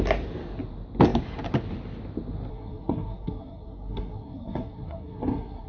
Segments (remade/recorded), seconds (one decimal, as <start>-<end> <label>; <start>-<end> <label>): 0.0-2.5 recorded; 2.5-5.7 remade